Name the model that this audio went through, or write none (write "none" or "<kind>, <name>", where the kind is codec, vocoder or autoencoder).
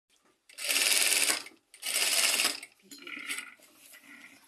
none